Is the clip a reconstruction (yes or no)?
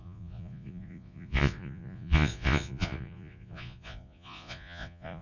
yes